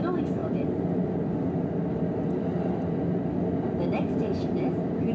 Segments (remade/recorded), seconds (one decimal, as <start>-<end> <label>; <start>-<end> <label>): 0.0-5.1 recorded